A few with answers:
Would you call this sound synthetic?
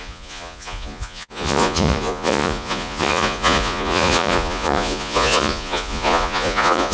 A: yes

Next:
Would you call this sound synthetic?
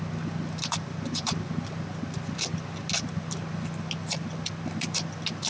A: no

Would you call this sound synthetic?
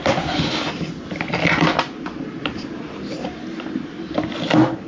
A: no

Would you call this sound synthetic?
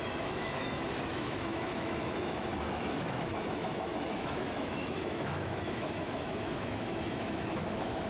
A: yes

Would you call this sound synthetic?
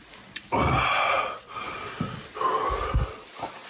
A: no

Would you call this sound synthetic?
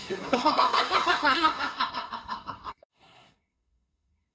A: yes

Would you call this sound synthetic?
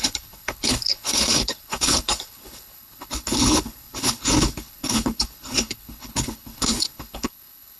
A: yes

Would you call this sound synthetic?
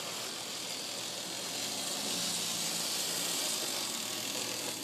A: no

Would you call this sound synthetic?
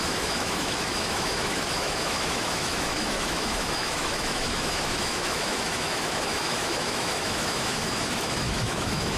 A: yes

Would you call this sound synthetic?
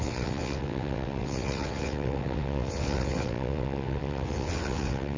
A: yes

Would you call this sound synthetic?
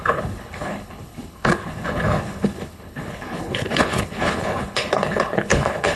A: yes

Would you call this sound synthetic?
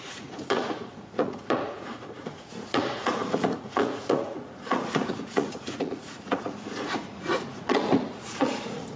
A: yes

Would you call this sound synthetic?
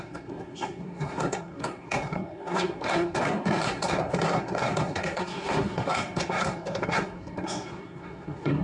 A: yes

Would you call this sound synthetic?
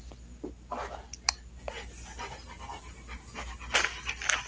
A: no